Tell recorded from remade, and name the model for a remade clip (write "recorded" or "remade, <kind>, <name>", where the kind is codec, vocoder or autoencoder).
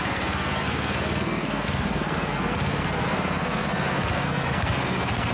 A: remade, codec, SNAC